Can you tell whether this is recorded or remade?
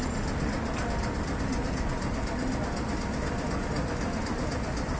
recorded